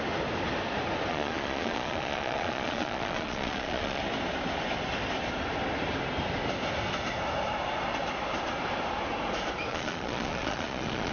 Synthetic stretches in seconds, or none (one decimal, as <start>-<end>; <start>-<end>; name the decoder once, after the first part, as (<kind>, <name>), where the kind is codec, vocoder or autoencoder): 1.1-4.0 (vocoder, Vocos); 9.7-11.1